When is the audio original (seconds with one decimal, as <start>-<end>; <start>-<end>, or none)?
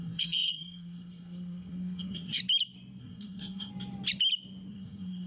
2.4-3.0; 3.7-4.7